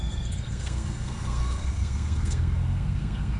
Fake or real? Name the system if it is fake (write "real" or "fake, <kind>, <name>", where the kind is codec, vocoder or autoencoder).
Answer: fake, codec, SNAC